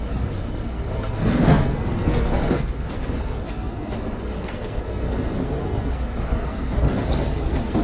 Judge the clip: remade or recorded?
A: remade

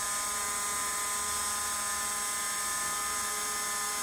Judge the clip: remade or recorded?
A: recorded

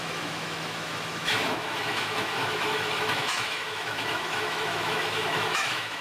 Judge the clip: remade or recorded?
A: remade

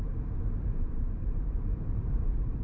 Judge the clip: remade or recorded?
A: remade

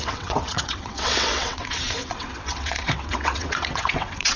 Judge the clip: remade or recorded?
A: remade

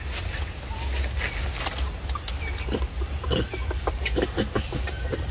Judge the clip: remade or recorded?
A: recorded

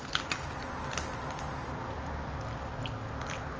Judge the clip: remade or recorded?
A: recorded